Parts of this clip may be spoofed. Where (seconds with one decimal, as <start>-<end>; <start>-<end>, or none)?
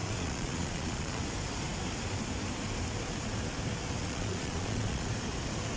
0.0-1.2; 4.0-5.1